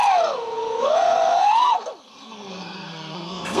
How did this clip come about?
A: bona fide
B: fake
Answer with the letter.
B